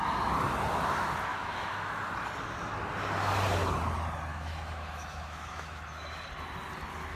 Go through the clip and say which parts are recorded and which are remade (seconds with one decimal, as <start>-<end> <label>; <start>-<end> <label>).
0.0-1.3 recorded; 1.3-2.0 remade; 2.0-4.3 recorded; 4.3-6.2 remade; 6.2-7.2 recorded